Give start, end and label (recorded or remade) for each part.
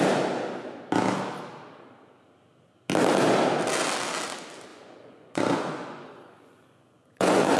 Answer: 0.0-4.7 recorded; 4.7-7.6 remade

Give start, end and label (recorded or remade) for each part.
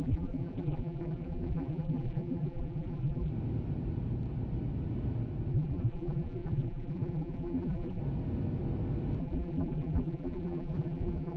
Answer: 0.0-3.3 remade; 3.3-5.5 recorded; 5.5-8.0 remade; 8.0-9.2 recorded; 9.2-11.4 remade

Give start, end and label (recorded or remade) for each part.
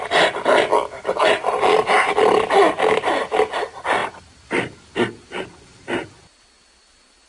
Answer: 0.0-7.3 recorded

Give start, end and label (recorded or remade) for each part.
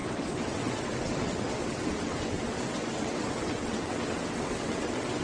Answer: 0.0-5.2 remade